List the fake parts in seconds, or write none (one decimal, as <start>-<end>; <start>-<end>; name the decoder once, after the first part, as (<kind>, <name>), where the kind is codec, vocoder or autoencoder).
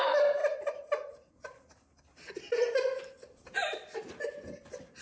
none